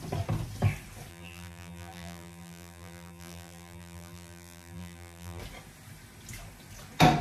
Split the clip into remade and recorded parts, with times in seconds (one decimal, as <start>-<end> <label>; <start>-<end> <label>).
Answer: 0.0-1.1 recorded; 1.1-5.4 remade; 5.4-7.2 recorded